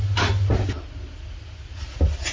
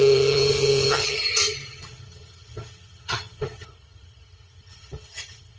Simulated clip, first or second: second